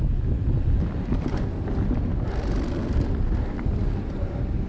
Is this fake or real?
real